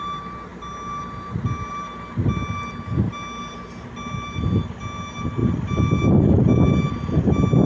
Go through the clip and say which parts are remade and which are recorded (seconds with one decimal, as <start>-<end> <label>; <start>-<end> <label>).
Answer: 0.0-7.7 recorded